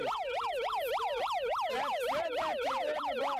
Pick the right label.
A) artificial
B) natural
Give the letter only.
A